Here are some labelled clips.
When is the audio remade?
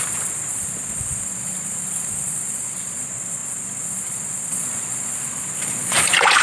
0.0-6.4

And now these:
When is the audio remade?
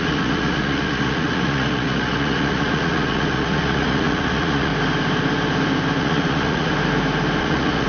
0.0-4.7; 6.0-6.7; 7.4-7.9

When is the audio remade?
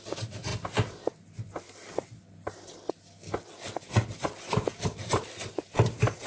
none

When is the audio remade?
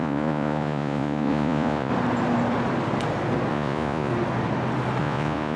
0.0-1.9; 3.5-4.1; 5.0-5.6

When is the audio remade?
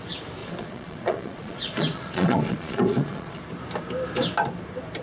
0.4-3.4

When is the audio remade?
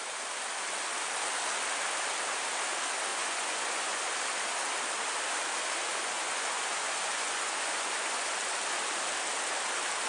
3.1-4.1; 5.9-8.3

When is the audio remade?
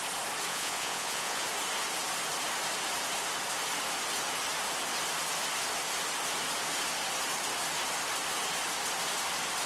0.5-1.4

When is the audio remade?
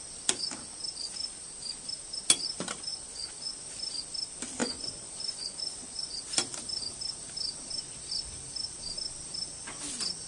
2.9-3.5; 4.6-6.2